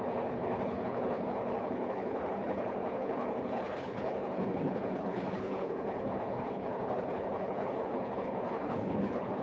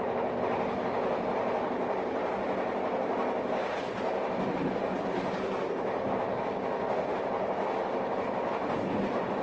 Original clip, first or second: second